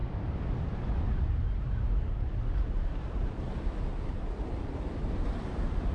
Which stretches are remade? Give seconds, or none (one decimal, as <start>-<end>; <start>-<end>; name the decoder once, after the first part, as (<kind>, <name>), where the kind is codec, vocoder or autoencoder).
none